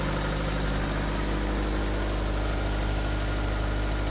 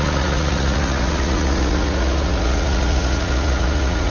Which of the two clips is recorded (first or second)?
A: first